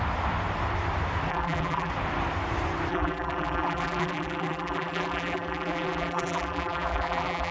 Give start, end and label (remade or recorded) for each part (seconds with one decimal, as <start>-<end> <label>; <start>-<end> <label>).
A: 0.0-1.3 recorded; 1.3-1.9 remade; 1.9-2.9 recorded; 2.9-7.5 remade